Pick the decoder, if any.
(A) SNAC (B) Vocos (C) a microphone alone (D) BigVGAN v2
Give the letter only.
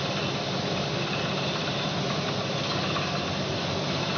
C